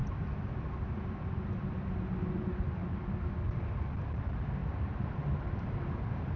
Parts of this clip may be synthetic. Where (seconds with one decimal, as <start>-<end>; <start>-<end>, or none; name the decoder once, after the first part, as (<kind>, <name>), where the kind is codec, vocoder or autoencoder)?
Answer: none